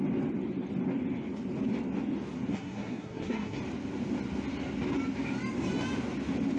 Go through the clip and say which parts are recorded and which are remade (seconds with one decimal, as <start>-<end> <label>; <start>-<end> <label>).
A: 0.0-2.5 recorded; 2.5-3.6 remade; 3.6-6.6 recorded

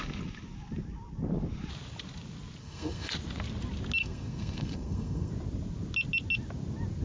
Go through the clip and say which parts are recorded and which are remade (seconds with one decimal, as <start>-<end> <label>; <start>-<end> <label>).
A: 0.0-2.6 recorded; 2.6-3.1 remade; 3.1-4.0 recorded; 4.0-5.3 remade; 5.3-7.0 recorded

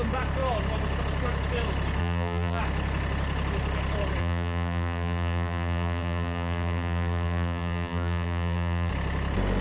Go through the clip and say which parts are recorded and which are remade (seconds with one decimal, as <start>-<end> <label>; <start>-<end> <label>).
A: 0.0-2.0 recorded; 2.0-2.6 remade; 2.6-4.2 recorded; 4.2-8.9 remade; 8.9-9.6 recorded

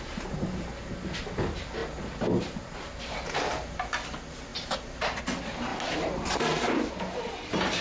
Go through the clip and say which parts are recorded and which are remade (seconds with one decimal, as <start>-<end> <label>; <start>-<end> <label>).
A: 0.0-5.7 recorded; 5.7-6.9 remade; 6.9-7.8 recorded